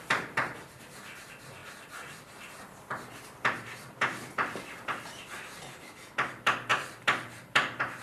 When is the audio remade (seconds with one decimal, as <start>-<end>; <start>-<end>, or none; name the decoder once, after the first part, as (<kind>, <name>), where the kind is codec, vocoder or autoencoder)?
0.0-8.0 (vocoder, BigVGAN v2)